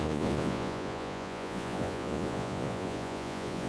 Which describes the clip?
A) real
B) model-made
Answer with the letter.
B